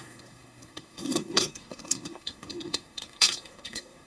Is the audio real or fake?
fake